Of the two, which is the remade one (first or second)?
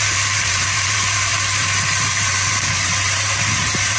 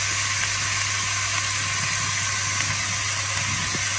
first